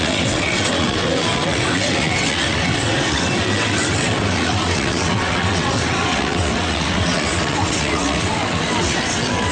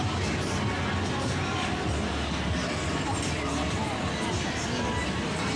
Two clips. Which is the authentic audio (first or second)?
second